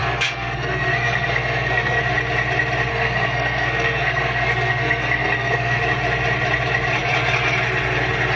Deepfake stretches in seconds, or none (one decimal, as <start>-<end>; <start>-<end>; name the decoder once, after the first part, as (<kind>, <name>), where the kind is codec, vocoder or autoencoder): 0.0-2.0 (codec, SNAC); 2.9-5.8